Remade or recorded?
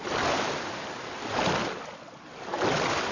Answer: recorded